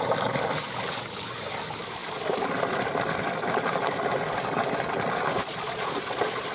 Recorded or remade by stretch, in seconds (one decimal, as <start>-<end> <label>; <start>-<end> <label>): 0.0-5.3 recorded; 5.3-6.5 remade